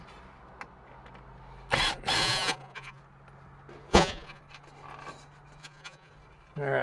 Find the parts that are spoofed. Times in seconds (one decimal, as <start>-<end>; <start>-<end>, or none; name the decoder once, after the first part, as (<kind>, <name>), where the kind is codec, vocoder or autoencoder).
2.2-3.0 (vocoder, Vocos); 3.9-4.4; 5.6-6.1